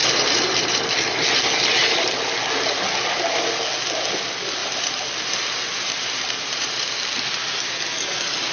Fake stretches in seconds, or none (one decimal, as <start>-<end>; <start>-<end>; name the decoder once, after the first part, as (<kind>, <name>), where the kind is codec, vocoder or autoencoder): 0.0-0.8 (vocoder, BigVGAN v2); 4.6-6.9